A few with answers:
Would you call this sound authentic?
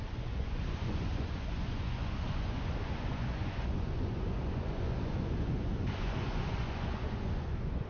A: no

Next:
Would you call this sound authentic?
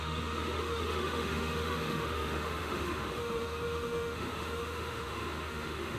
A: no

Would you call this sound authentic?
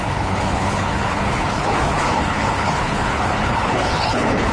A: no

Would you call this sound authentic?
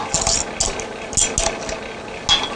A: yes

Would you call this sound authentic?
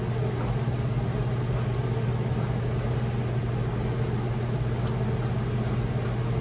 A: yes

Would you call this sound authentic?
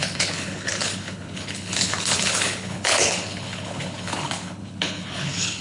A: no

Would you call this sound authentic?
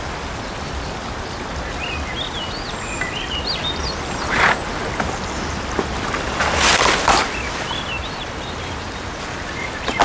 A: yes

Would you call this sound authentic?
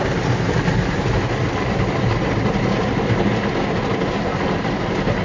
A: yes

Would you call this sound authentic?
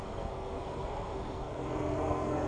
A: no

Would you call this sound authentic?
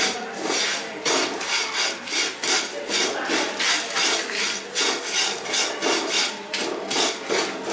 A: yes